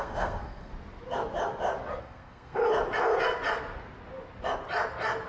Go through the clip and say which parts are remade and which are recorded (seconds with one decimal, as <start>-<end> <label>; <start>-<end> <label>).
0.0-0.7 remade; 0.7-2.0 recorded; 2.0-2.6 remade; 2.6-5.3 recorded